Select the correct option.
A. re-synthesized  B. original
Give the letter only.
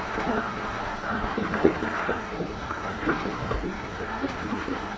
A